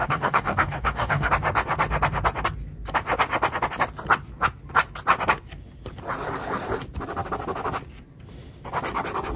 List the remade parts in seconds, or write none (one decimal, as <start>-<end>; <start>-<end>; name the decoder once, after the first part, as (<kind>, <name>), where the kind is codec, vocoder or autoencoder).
0.0-1.3 (codec, DAC)